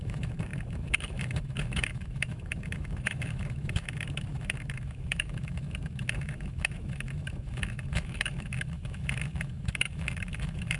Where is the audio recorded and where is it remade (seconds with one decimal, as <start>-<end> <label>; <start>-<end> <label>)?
0.0-10.8 remade